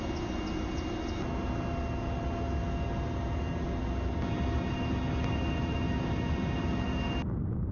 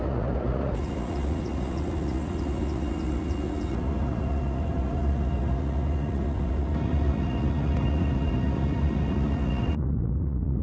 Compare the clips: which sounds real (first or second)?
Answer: first